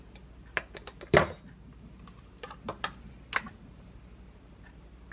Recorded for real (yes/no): yes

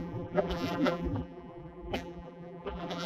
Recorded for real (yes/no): no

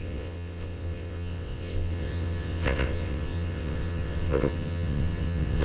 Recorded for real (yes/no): no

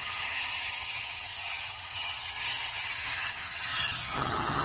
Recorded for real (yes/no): no